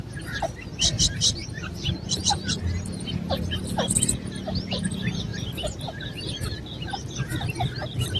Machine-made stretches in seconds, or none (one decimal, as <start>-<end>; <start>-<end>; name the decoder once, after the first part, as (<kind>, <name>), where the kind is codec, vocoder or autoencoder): 5.3-6.6 (vocoder, BigVGAN v2)